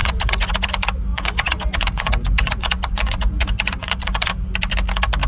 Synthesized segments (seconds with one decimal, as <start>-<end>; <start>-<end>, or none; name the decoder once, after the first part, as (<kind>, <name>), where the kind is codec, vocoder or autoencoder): 0.0-0.7 (vocoder, Vocos); 1.1-4.3